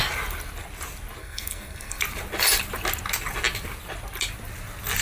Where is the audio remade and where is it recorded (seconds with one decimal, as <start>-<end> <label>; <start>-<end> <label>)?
0.0-1.2 recorded; 1.2-2.0 remade; 2.0-5.0 recorded